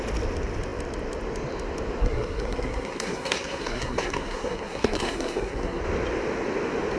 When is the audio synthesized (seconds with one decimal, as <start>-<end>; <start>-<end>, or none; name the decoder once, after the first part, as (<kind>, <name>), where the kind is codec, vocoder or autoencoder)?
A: 2.0-5.8 (codec, SNAC)